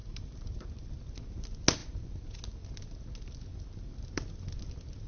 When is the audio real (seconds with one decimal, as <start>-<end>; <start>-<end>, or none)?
0.9-5.1